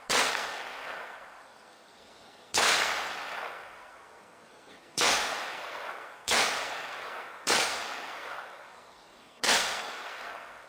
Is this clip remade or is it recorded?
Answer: remade